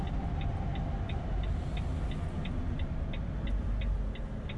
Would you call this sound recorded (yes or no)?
yes